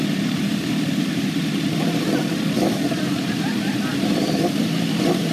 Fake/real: fake